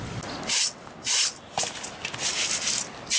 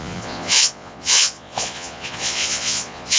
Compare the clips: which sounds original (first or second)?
first